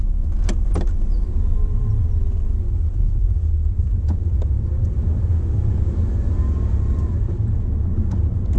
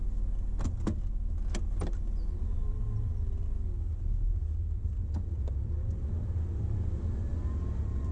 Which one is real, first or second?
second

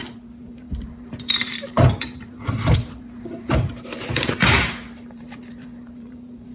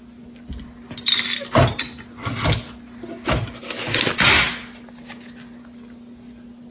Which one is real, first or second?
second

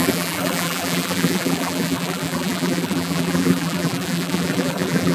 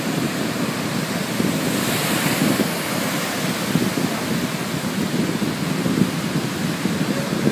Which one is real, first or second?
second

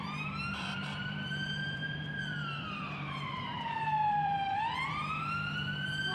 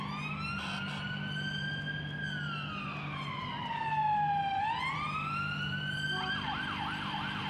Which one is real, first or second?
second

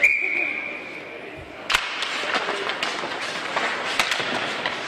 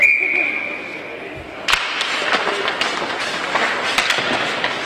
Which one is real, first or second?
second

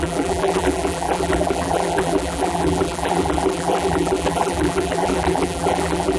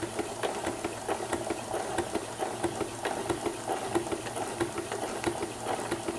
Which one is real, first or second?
second